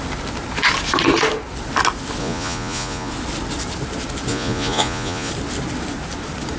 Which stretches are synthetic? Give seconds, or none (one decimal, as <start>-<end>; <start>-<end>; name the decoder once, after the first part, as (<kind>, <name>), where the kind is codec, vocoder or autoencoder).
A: 2.2-3.1 (vocoder, Vocos); 4.3-5.3